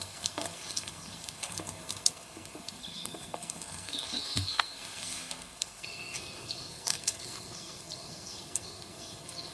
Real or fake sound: fake